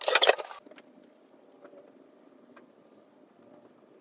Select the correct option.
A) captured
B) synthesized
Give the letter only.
A